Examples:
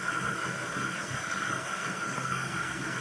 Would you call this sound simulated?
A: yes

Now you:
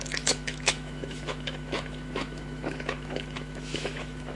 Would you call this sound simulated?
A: yes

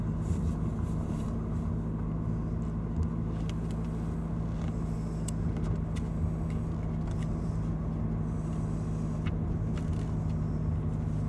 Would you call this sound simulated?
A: no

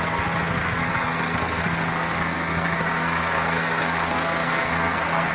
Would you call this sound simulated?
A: yes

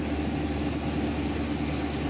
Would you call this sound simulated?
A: no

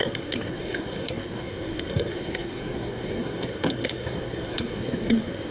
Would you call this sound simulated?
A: yes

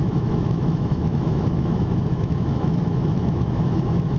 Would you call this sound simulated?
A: yes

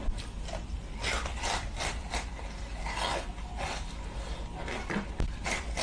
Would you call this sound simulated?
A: no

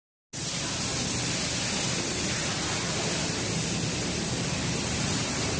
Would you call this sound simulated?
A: no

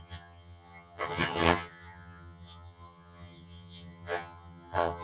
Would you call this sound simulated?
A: yes